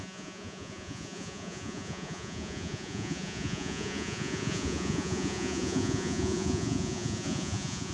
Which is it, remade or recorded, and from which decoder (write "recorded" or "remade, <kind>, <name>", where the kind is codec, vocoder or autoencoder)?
remade, vocoder, Vocos